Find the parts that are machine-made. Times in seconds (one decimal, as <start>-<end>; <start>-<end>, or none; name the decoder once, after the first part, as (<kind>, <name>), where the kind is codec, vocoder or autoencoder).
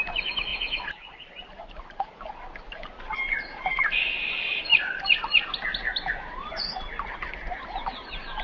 0.5-2.1 (vocoder, BigVGAN v2)